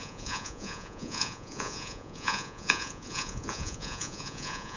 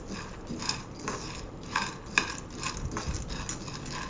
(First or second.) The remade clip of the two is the first